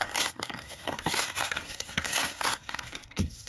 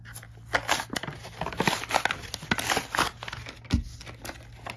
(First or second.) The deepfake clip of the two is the first